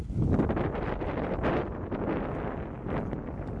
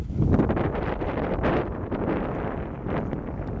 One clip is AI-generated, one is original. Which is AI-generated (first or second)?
second